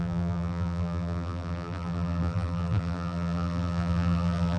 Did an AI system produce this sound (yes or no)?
yes